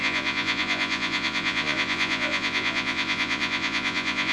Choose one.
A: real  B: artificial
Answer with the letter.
B